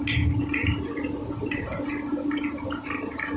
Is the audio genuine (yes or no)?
yes